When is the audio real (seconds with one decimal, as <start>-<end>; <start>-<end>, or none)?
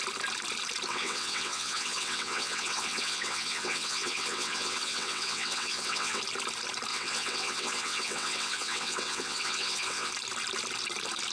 0.0-0.9; 6.2-6.9; 10.1-11.3